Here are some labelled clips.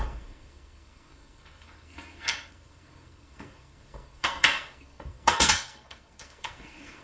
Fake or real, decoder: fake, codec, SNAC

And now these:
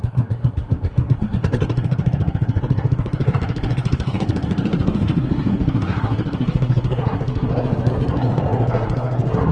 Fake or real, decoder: fake, codec, SNAC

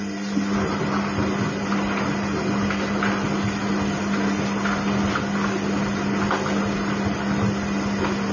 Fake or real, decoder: real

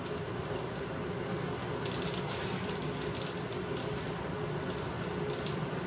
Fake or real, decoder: real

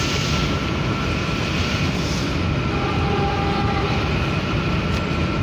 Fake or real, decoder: real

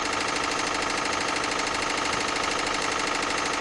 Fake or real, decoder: real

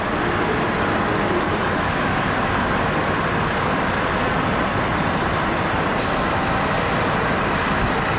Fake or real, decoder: real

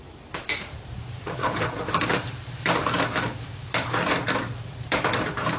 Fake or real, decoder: fake, vocoder, BigVGAN v2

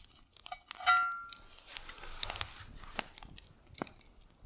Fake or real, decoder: real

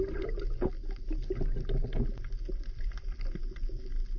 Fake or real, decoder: real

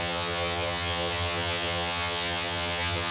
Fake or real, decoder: fake, vocoder, HiFi-GAN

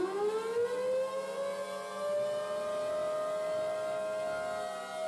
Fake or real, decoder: real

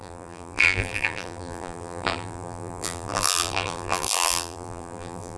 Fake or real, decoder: fake, vocoder, BigVGAN v2